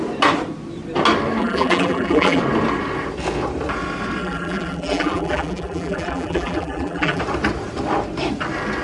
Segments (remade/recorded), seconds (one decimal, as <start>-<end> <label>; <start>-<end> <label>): 0.0-1.4 recorded; 1.4-2.4 remade; 2.4-4.2 recorded; 4.2-7.2 remade; 7.2-8.8 recorded